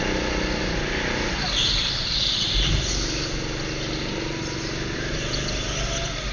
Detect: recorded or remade recorded